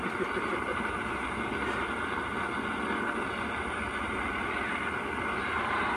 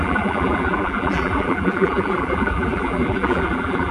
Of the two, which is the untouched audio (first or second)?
first